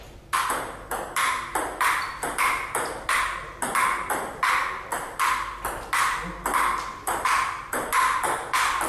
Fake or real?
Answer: real